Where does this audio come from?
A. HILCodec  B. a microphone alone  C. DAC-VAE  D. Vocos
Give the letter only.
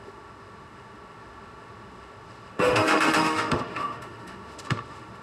C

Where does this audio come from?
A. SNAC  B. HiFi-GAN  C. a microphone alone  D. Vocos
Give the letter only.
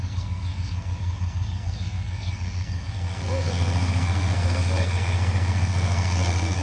A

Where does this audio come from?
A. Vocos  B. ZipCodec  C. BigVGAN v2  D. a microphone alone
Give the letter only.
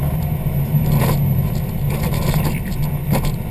D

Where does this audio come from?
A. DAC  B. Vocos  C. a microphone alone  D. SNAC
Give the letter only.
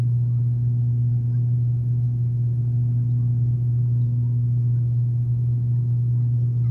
C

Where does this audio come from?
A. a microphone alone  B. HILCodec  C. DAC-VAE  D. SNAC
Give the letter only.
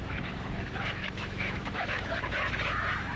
C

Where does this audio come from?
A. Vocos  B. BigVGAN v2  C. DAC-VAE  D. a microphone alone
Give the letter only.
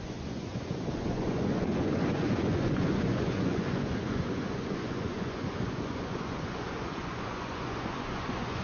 A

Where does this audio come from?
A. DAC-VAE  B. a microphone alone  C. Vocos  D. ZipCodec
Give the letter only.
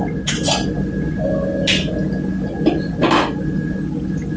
B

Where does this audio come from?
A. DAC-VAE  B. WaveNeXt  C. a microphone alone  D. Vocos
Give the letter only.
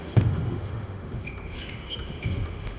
A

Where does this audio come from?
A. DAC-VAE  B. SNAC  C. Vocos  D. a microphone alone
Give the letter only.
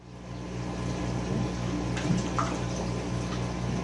D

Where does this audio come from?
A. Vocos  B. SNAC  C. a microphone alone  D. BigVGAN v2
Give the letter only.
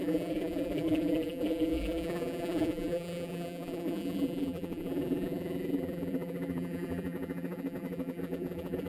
D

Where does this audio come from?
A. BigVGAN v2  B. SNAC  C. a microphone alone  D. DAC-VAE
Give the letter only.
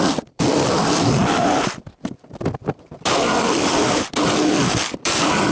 A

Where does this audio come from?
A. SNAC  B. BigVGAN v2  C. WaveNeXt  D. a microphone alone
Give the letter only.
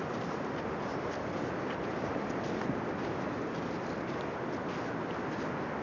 D